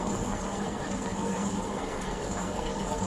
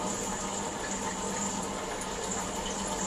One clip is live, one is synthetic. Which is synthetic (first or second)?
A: first